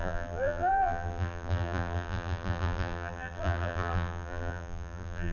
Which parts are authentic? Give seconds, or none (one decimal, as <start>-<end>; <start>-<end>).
none